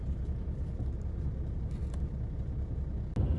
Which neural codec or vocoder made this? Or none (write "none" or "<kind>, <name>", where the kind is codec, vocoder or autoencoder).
none